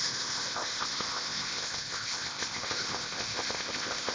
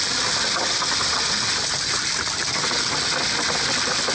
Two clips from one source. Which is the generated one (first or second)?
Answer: first